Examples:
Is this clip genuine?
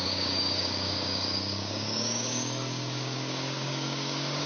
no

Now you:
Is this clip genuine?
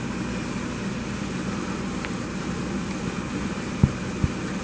yes